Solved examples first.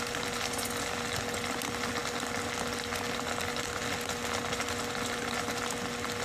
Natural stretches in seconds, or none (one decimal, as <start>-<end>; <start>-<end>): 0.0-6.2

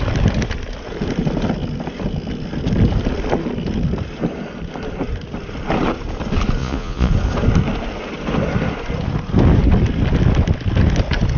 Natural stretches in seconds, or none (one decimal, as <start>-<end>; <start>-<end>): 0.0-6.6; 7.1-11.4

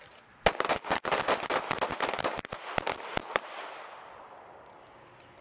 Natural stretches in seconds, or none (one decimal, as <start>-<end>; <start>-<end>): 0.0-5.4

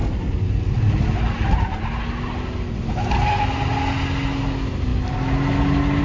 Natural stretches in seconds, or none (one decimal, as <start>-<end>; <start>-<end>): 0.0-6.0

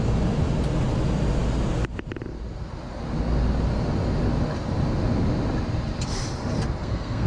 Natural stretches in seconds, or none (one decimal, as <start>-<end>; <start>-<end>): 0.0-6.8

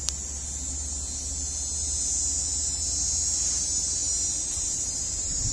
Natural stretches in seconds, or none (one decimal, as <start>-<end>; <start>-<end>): 0.0-5.5